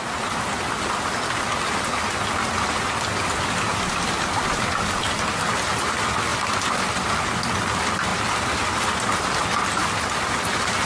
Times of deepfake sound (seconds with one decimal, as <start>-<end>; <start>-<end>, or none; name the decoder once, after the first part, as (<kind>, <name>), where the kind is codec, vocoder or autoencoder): 3.7-5.2 (vocoder, BigVGAN v2); 6.3-7.1; 9.8-10.3